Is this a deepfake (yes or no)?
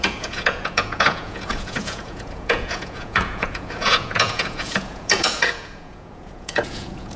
yes